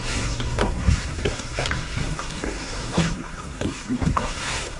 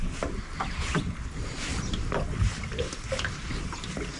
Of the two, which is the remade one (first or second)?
first